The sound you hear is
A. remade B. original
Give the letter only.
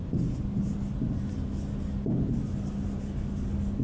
B